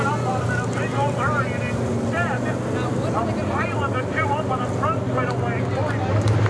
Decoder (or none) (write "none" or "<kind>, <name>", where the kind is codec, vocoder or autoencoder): none